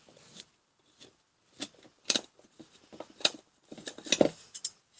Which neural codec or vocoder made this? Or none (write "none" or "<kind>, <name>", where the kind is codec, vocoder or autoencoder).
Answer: none